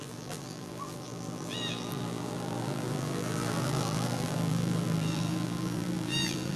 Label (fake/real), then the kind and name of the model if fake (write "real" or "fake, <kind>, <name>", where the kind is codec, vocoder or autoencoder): fake, vocoder, BigVGAN v2